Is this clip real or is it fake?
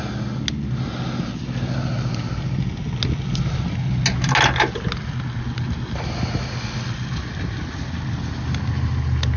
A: real